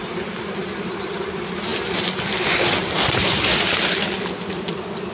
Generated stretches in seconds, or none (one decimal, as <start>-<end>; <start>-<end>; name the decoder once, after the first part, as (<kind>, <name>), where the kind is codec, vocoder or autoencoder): none